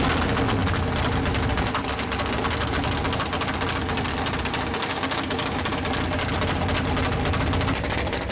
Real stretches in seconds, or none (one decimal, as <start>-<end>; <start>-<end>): 0.0-4.9; 5.6-8.3